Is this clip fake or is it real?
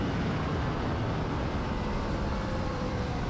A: fake